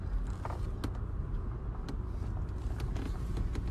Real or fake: real